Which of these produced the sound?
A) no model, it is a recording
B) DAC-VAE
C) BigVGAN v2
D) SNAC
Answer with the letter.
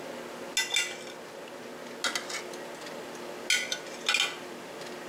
A